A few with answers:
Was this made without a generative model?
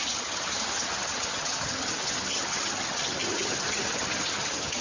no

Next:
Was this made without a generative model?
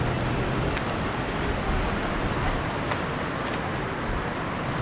yes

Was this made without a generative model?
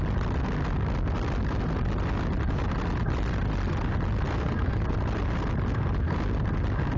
yes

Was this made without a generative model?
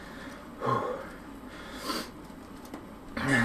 yes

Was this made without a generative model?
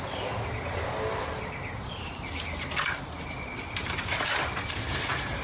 yes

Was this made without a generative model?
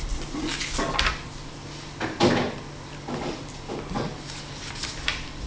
yes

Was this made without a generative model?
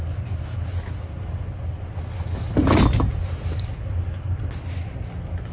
yes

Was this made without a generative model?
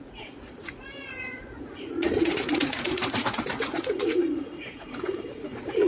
no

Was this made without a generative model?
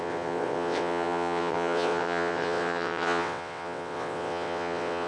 no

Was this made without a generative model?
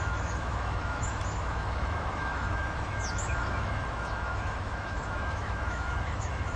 no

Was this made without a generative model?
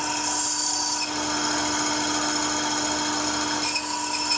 yes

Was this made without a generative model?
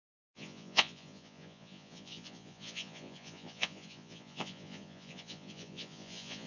no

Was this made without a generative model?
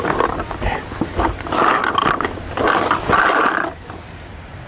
yes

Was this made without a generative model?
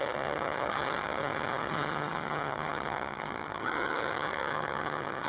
no